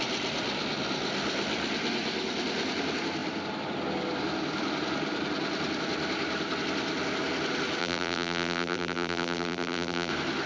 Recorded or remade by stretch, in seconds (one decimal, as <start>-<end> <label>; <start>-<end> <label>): 0.0-7.8 recorded; 7.8-10.1 remade; 10.1-10.5 recorded

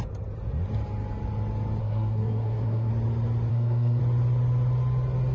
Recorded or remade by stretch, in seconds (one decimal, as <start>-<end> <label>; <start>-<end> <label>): 0.0-1.8 recorded; 1.8-2.9 remade; 2.9-3.5 recorded; 3.5-4.0 remade; 4.0-5.3 recorded

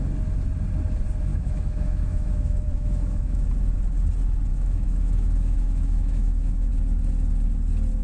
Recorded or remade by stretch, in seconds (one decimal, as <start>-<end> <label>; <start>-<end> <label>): 0.0-1.3 recorded; 1.3-3.5 remade; 3.5-4.5 recorded; 4.5-6.7 remade; 6.7-8.0 recorded

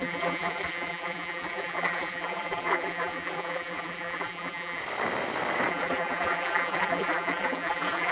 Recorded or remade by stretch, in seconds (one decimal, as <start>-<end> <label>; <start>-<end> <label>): 0.0-4.8 remade; 4.8-5.7 recorded; 5.7-8.1 remade

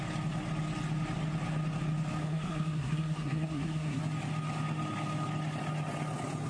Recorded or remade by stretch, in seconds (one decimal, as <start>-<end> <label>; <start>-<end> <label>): 0.0-2.2 recorded; 2.2-4.0 remade; 4.0-6.5 recorded

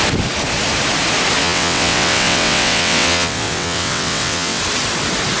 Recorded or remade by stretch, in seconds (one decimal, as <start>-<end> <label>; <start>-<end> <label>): 0.0-1.4 recorded; 1.4-4.6 remade; 4.6-5.4 recorded

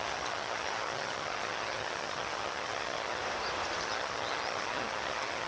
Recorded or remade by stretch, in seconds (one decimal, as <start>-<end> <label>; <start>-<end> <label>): 0.0-3.2 remade; 3.2-3.8 recorded; 3.8-5.5 remade